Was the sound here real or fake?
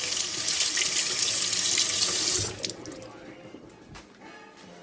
real